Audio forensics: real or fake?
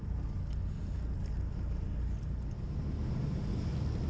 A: real